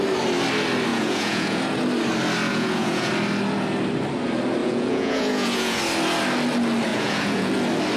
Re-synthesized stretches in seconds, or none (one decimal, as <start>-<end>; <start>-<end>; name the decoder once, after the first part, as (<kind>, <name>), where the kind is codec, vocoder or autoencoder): 0.9-1.6 (vocoder, Vocos); 2.5-3.1; 4.6-5.8; 6.9-7.5